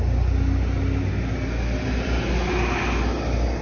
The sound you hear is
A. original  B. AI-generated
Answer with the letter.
A